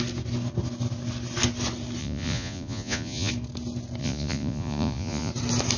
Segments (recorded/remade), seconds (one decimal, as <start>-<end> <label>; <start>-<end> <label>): 0.0-2.0 recorded; 2.0-3.3 remade; 3.3-4.0 recorded; 4.0-5.3 remade; 5.3-5.8 recorded